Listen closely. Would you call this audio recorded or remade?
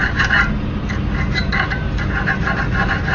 recorded